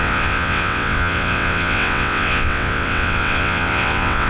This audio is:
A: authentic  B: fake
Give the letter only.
B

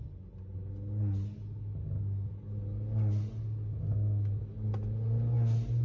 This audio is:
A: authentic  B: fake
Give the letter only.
A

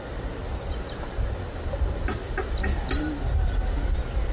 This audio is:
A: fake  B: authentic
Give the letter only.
B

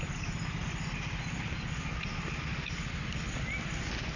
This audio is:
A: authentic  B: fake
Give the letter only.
A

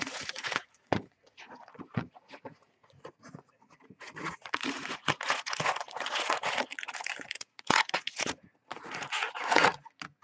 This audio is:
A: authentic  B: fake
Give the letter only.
B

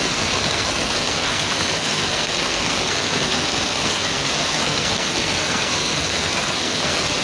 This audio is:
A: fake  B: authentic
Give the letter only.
A